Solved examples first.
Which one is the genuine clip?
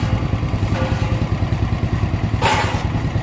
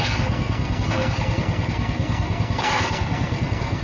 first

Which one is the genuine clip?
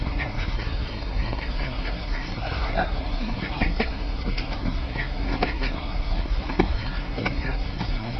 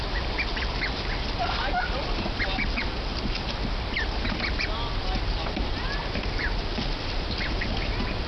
second